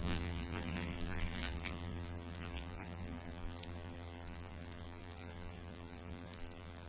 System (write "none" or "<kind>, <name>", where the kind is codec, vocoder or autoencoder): vocoder, BigVGAN v2